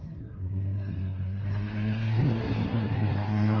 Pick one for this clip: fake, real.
fake